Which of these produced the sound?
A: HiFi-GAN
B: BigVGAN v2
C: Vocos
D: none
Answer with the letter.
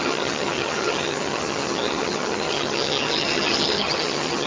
A